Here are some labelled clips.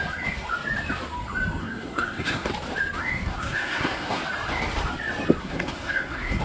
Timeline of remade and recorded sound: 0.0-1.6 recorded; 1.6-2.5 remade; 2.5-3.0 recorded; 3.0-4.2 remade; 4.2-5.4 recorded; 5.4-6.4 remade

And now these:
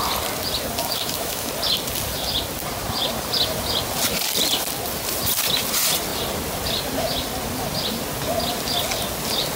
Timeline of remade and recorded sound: 0.0-0.8 recorded; 0.8-1.5 remade; 1.5-9.6 recorded

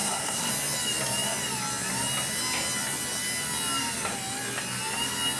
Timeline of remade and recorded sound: 0.0-0.5 remade; 0.5-5.4 recorded

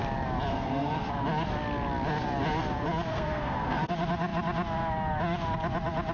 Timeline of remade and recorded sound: 0.0-0.5 recorded; 0.5-1.1 remade; 1.1-3.1 recorded; 3.1-3.9 remade; 3.9-6.1 recorded

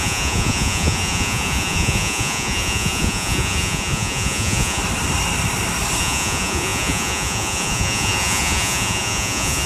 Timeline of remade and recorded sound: 0.0-4.8 remade; 4.8-6.0 recorded; 6.0-9.7 remade

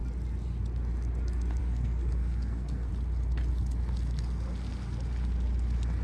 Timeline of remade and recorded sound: 0.0-1.6 recorded; 1.6-2.9 remade; 2.9-6.0 recorded

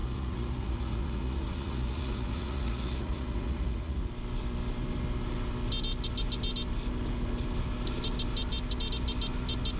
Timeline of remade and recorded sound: 0.0-4.0 remade; 4.0-9.8 recorded

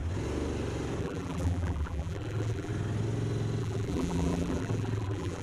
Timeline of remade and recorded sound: 0.0-1.0 recorded; 1.0-2.7 remade; 2.7-3.6 recorded; 3.6-5.4 remade